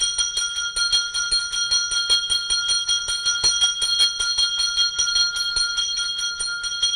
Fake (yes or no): no